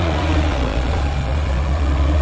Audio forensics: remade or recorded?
remade